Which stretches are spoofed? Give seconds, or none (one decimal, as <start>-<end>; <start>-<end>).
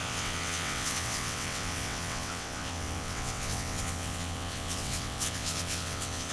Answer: 0.0-6.3